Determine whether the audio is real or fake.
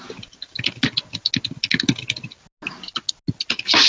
real